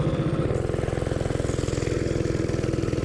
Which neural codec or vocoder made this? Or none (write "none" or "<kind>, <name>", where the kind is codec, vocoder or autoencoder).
none